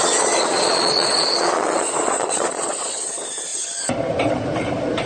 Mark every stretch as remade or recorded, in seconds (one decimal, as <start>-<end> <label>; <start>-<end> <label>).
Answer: 0.0-3.1 remade; 3.1-5.1 recorded

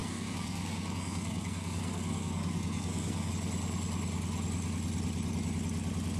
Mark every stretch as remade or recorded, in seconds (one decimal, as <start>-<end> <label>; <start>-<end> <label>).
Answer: 0.0-3.3 remade; 3.3-6.2 recorded

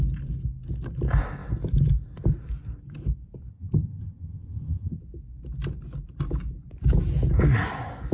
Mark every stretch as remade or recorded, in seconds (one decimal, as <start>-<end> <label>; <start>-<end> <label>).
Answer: 0.0-3.5 recorded; 3.5-5.0 remade; 5.0-8.1 recorded

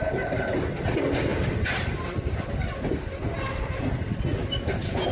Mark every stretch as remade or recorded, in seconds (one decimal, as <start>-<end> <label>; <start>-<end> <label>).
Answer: 0.0-5.1 recorded

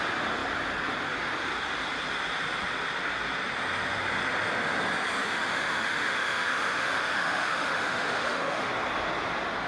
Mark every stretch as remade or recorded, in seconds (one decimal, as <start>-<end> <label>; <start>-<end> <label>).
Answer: 0.0-5.2 recorded; 5.2-8.7 remade; 8.7-9.7 recorded

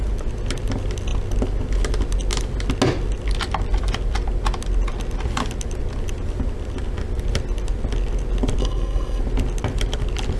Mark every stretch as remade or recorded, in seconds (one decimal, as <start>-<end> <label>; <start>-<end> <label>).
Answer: 0.0-8.6 recorded; 8.6-9.2 remade; 9.2-10.4 recorded